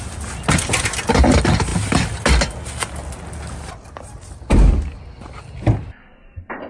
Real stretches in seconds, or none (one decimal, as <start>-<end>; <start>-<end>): 0.0-6.7